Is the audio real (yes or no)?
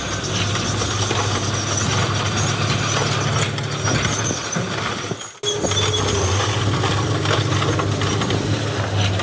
yes